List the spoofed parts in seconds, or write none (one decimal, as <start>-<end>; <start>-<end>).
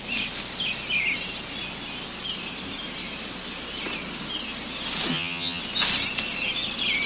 5.1-5.6